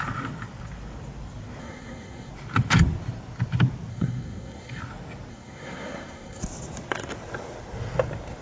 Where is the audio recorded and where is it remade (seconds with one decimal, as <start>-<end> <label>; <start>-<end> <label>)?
0.0-1.6 recorded; 1.6-2.3 remade; 2.3-3.9 recorded; 3.9-4.8 remade; 4.8-5.3 recorded; 5.3-6.4 remade; 6.4-8.4 recorded